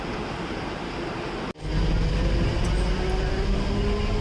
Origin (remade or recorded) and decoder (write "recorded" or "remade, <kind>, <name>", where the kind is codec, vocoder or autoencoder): recorded